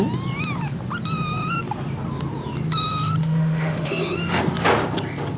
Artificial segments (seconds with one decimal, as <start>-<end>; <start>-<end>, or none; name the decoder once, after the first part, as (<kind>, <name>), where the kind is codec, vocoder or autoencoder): 3.2-4.4 (autoencoder, DAC-VAE)